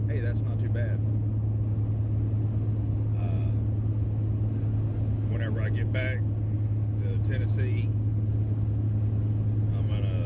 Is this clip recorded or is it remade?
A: recorded